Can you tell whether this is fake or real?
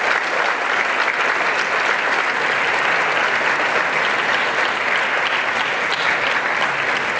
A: real